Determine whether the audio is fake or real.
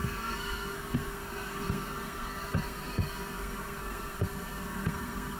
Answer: fake